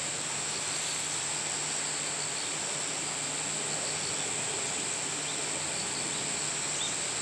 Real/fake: real